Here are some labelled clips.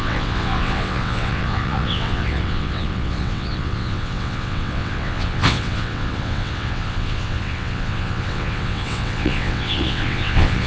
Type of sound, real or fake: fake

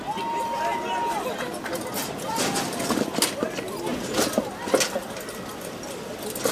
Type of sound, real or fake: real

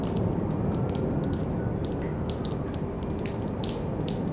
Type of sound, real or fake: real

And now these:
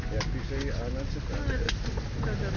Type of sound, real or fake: real